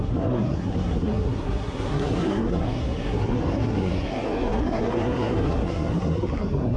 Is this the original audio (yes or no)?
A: no